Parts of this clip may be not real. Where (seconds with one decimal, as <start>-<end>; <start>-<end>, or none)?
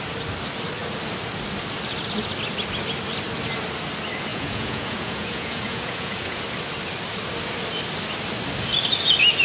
4.3-6.4